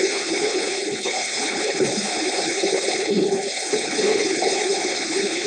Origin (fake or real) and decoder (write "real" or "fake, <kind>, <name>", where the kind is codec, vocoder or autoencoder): fake, codec, HILCodec